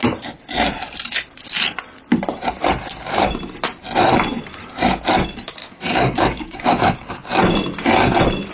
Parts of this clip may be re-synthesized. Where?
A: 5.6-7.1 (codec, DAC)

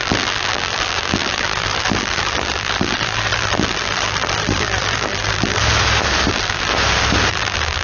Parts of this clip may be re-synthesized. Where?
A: 0.0-5.6 (vocoder, BigVGAN v2); 6.3-6.7; 7.3-7.8

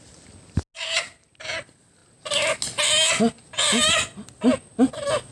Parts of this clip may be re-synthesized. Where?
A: none